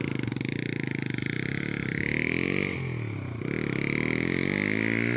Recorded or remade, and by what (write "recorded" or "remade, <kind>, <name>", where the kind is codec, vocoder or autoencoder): recorded